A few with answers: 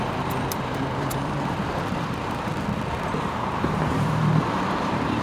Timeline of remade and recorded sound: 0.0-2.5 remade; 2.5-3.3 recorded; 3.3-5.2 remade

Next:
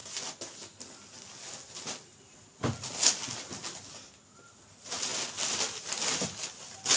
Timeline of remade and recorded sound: 0.0-7.0 recorded

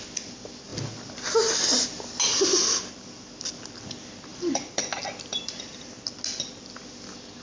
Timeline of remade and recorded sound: 0.0-4.3 recorded; 4.3-4.8 remade; 4.8-5.3 recorded; 5.3-6.0 remade; 6.0-7.4 recorded